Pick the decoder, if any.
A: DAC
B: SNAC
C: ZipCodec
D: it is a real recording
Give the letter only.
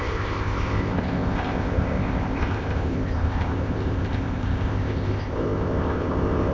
C